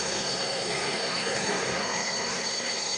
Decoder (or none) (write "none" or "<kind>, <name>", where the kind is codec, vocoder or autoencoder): codec, SNAC